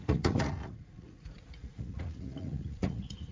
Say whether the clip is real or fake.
fake